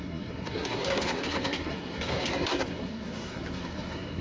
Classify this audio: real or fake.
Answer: fake